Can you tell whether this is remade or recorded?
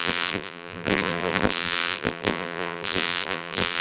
remade